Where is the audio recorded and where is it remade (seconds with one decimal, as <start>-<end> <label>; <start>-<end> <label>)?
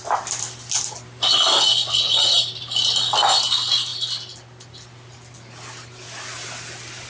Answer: 0.0-7.1 recorded